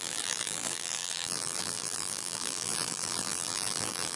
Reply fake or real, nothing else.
fake